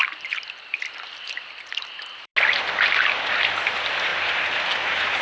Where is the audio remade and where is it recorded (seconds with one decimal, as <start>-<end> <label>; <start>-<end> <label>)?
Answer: 0.0-2.3 remade; 2.3-3.3 recorded; 3.3-5.2 remade